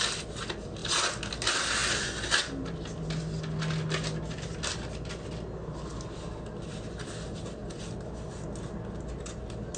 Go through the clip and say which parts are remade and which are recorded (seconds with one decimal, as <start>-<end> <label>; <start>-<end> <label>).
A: 0.0-9.8 recorded

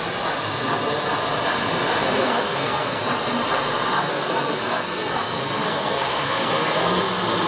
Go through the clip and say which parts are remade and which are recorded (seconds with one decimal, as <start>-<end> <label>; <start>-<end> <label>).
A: 0.0-2.2 recorded; 2.2-3.0 remade; 3.0-4.1 recorded; 4.1-7.0 remade; 7.0-7.5 recorded

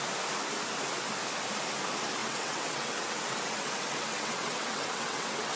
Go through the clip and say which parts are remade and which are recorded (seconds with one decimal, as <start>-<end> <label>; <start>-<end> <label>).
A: 0.0-2.2 recorded; 2.2-5.6 remade

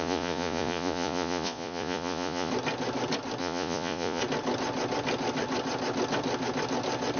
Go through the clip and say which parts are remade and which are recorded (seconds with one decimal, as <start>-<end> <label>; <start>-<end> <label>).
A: 0.0-2.5 remade; 2.5-3.4 recorded; 3.4-4.2 remade; 4.2-7.2 recorded

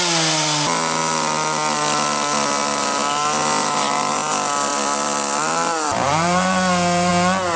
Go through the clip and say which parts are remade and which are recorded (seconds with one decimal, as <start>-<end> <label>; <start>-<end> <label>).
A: 0.0-4.7 recorded; 4.7-7.1 remade; 7.1-7.6 recorded

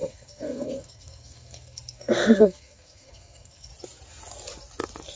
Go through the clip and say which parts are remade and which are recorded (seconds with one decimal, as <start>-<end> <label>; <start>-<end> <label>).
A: 0.0-3.7 remade; 3.7-5.2 recorded

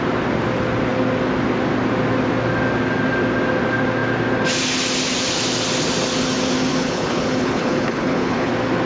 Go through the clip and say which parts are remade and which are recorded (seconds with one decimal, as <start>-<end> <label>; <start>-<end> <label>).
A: 0.0-6.7 recorded; 6.7-8.5 remade; 8.5-8.9 recorded